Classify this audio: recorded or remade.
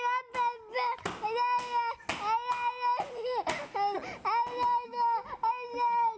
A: recorded